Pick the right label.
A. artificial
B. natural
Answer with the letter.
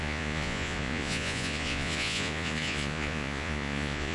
A